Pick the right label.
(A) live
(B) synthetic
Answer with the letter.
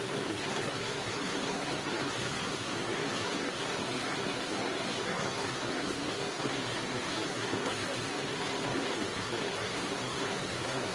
B